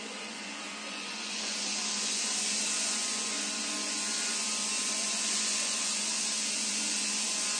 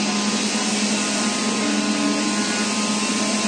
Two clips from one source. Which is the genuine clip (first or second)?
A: second